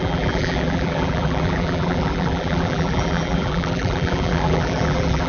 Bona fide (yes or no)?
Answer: no